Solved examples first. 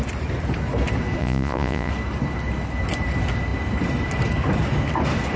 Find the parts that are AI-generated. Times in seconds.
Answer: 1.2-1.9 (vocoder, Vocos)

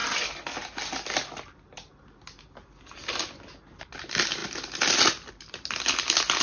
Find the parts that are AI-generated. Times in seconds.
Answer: none

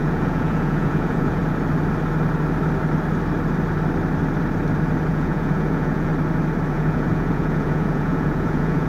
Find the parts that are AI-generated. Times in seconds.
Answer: 0.0-1.4 (vocoder, Vocos); 5.1-6.1; 6.7-8.9

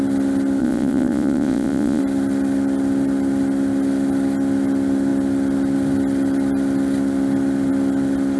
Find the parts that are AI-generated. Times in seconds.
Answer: 0.6-2.0 (vocoder, Vocos)

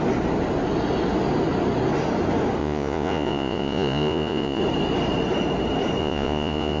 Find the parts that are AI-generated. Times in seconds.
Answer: 2.6-4.6 (vocoder, Vocos); 6.0-6.8

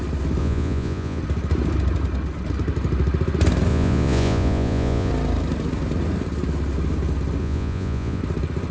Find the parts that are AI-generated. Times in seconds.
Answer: 0.4-1.2 (vocoder, Vocos); 3.7-5.1; 7.4-8.2

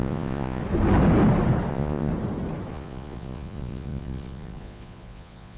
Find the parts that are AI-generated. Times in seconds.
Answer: 0.0-0.6 (vocoder, Vocos); 1.7-2.1; 2.7-5.6

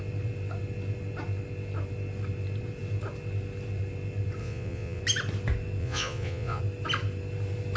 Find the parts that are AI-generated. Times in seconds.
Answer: 4.4-5.0 (vocoder, Vocos); 5.8-6.6